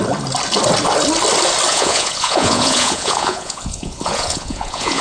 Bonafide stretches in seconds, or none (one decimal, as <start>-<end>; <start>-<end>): 0.0-1.7